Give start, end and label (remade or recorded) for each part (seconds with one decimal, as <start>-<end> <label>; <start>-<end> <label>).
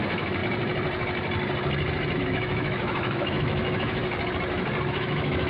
0.0-0.4 remade; 0.4-2.2 recorded; 2.2-4.0 remade; 4.0-4.9 recorded; 4.9-5.5 remade